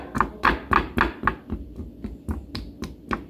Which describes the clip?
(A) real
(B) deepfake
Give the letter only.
A